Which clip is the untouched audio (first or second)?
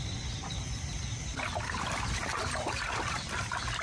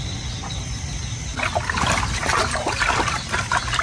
second